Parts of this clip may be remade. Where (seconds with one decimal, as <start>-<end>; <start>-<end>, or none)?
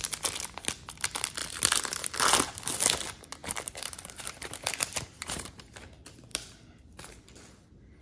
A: 1.4-2.0; 3.4-5.7